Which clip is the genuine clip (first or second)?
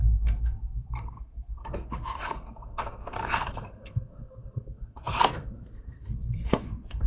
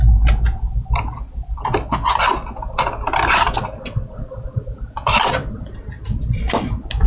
second